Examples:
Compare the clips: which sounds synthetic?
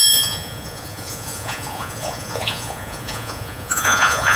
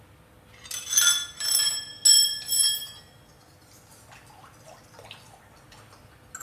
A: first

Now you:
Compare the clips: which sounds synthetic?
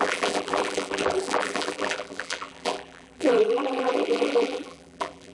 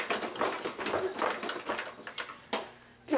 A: first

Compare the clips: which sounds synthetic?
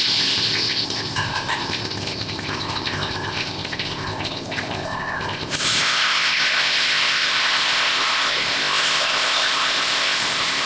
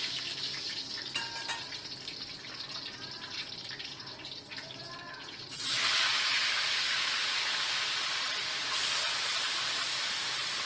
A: first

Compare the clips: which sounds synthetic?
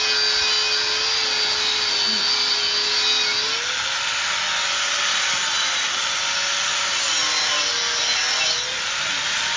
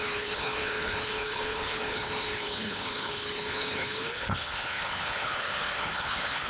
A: second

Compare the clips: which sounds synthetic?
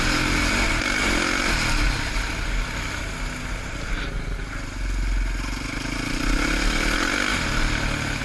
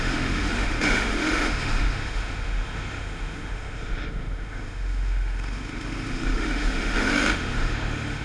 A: second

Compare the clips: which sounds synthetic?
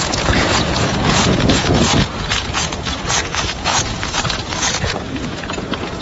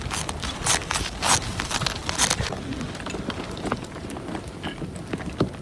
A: first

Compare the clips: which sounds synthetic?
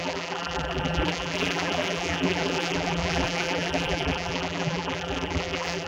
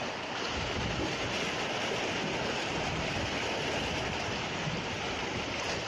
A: first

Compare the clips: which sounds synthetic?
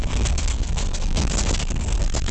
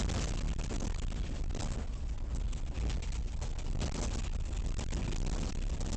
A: first